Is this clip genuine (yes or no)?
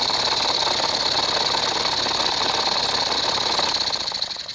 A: yes